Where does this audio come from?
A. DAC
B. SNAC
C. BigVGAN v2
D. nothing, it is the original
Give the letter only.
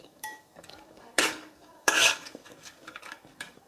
A